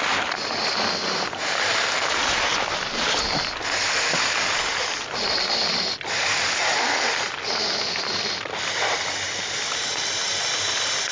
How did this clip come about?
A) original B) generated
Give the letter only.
A